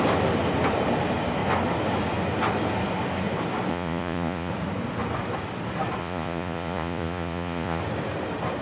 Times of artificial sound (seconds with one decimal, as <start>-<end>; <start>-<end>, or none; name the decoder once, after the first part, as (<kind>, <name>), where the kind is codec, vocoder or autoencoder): 3.7-4.5 (vocoder, Vocos); 6.0-7.8